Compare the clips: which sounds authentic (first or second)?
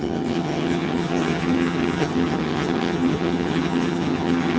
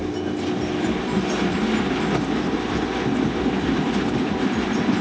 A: second